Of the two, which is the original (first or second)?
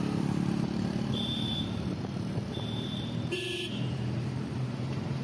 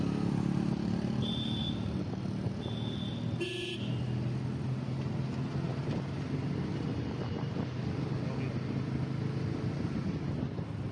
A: second